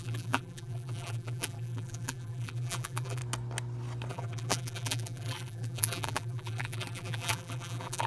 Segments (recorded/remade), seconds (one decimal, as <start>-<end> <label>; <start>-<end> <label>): 0.0-3.2 remade; 3.2-4.1 recorded; 4.1-8.1 remade